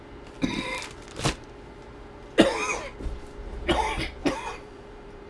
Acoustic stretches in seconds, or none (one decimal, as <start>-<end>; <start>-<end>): 0.0-4.2